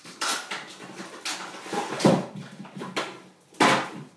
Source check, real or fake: real